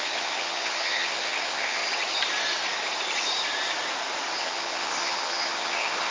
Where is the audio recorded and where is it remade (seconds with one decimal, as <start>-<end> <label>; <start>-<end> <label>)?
0.0-1.8 remade; 1.8-4.4 recorded; 4.4-6.1 remade